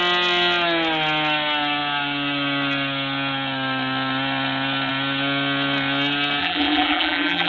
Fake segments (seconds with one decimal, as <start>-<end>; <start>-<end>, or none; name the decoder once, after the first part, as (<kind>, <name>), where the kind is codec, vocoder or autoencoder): 6.4-7.5 (vocoder, BigVGAN v2)